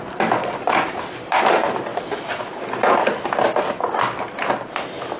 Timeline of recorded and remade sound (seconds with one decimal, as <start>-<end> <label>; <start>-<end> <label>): 0.0-5.2 recorded